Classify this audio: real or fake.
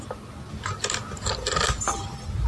real